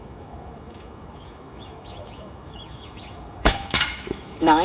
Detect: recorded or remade remade